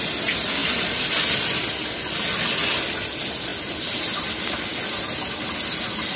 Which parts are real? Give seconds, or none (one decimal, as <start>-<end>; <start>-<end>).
0.0-6.2